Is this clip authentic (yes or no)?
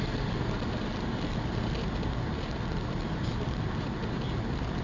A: yes